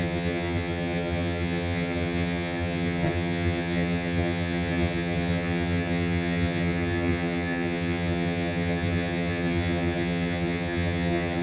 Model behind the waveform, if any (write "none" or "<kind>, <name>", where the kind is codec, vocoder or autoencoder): vocoder, HiFi-GAN